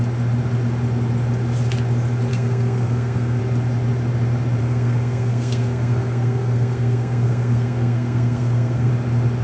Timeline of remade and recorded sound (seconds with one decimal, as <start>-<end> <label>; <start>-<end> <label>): 0.0-2.3 recorded; 2.3-3.4 remade; 3.4-4.6 recorded; 4.6-8.9 remade; 8.9-9.4 recorded